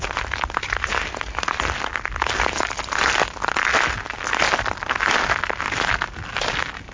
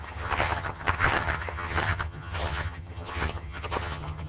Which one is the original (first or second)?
first